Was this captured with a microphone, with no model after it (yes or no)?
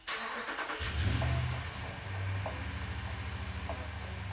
yes